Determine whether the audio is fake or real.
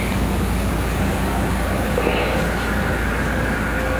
fake